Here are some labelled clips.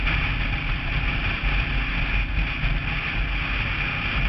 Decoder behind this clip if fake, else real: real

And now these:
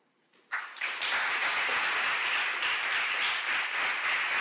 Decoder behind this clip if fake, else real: real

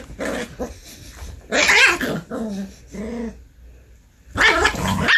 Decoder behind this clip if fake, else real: real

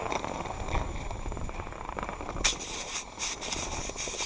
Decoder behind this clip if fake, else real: fake, vocoder, BigVGAN v2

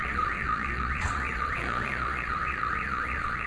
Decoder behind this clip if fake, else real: fake, vocoder, Vocos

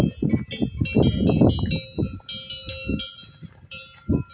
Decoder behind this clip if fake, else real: real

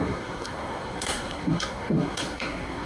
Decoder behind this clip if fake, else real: fake, codec, SNAC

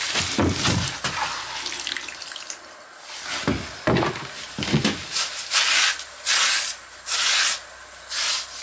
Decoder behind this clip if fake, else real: real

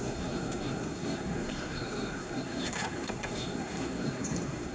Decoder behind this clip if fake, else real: fake, codec, SNAC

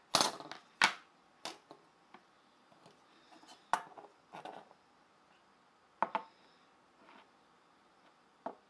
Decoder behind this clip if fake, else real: real